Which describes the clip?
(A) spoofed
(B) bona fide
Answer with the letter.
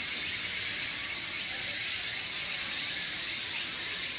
B